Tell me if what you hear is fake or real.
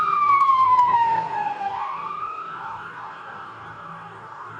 fake